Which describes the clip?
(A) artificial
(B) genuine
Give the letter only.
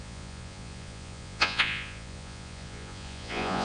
A